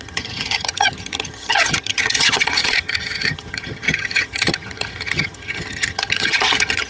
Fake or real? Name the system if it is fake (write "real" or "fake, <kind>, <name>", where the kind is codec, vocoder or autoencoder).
fake, vocoder, HiFi-GAN